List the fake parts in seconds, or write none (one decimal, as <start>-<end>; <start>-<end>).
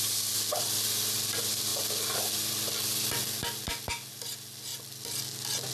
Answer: none